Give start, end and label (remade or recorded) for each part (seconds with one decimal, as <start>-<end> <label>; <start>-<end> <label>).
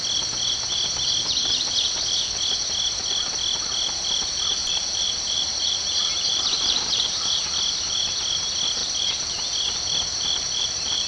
0.0-1.4 recorded; 1.4-2.3 remade; 2.3-4.6 recorded; 4.6-7.4 remade; 7.4-8.8 recorded; 8.8-9.3 remade; 9.3-10.1 recorded; 10.1-11.1 remade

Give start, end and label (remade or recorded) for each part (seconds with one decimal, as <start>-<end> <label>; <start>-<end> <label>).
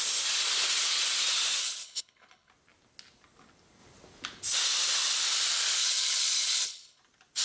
0.0-1.6 recorded; 1.6-2.5 remade; 2.5-5.8 recorded; 5.8-7.0 remade; 7.0-7.4 recorded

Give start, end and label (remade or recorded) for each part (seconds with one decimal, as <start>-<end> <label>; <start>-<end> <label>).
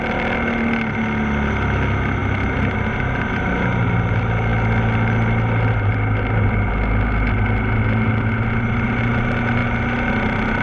0.0-10.6 recorded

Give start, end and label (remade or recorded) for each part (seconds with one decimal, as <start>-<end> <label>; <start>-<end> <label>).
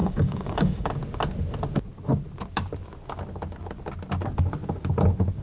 0.0-0.9 remade; 0.9-5.4 recorded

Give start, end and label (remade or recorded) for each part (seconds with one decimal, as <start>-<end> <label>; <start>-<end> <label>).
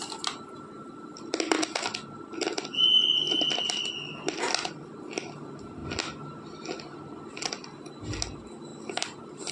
0.0-8.7 recorded; 8.7-9.5 remade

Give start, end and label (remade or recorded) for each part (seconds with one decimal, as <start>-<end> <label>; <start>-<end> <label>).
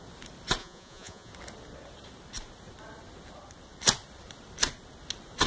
0.0-0.6 recorded; 0.6-1.3 remade; 1.3-5.5 recorded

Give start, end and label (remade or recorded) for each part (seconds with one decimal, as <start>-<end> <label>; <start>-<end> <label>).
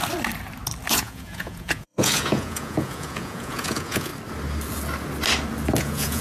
0.0-0.9 recorded; 0.9-4.1 remade; 4.1-5.8 recorded; 5.8-6.2 remade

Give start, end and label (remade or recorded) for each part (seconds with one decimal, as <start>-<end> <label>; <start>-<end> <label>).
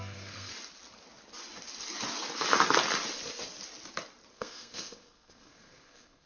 0.0-0.5 remade; 0.5-4.3 recorded; 4.3-6.3 remade